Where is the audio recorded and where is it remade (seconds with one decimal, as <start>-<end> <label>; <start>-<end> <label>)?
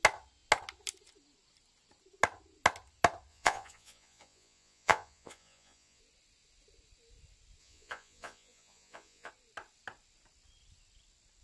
0.0-3.3 recorded; 3.3-6.0 remade; 6.0-7.6 recorded; 7.6-9.3 remade; 9.3-11.4 recorded